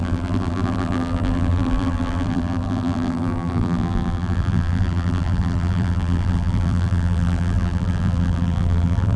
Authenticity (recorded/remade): remade